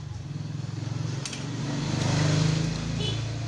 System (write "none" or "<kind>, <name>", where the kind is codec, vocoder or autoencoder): none